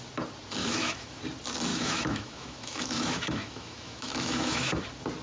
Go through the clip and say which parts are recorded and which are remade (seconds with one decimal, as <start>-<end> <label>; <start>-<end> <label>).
0.0-0.6 recorded; 0.6-1.2 remade; 1.2-1.7 recorded; 1.7-4.8 remade; 4.8-5.2 recorded